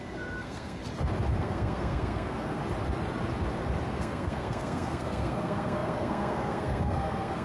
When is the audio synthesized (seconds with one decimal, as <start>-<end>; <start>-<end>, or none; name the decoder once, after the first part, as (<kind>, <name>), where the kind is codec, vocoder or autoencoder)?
0.0-0.8 (codec, SNAC); 1.4-2.6; 4.0-7.4